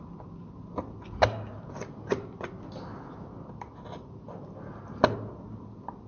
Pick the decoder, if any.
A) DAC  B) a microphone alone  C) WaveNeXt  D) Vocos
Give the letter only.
B